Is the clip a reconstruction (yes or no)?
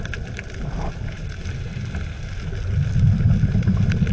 no